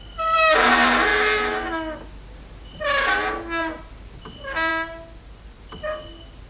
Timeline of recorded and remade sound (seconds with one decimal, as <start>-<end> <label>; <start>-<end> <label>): 0.0-6.5 recorded